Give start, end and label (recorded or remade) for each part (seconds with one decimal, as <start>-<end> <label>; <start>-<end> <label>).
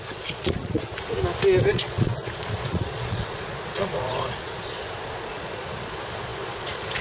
0.0-0.9 remade; 0.9-1.7 recorded; 1.7-7.0 remade